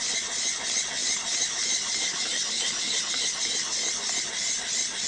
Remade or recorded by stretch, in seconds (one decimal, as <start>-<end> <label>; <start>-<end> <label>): 0.0-1.0 recorded; 1.0-3.0 remade; 3.0-5.1 recorded